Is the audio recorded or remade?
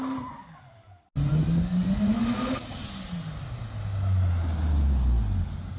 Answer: recorded